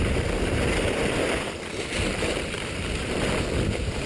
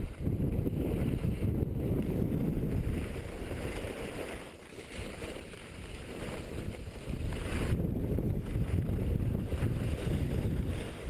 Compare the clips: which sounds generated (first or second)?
second